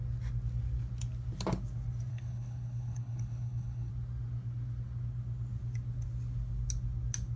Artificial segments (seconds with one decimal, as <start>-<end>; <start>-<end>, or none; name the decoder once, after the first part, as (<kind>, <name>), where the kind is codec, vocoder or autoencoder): 2.1-3.9 (codec, HILCodec)

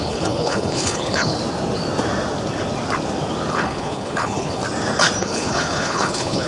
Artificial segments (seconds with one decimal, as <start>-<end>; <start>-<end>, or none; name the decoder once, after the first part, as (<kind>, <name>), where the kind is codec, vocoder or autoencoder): 0.0-1.4 (codec, HILCodec); 3.5-4.6; 5.2-6.5

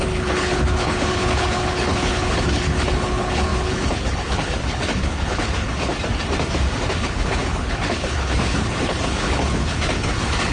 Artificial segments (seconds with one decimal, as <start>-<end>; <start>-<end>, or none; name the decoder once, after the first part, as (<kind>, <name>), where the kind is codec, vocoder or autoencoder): 0.0-5.9 (codec, HILCodec); 7.0-10.5

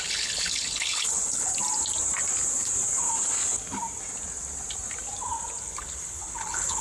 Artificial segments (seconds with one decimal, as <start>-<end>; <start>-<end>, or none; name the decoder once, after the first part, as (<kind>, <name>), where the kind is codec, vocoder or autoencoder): 0.0-1.5 (codec, HILCodec); 5.6-6.8